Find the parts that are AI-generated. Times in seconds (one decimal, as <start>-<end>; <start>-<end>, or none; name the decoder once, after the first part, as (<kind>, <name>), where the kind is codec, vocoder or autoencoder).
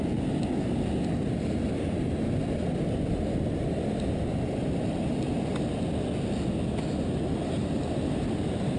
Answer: none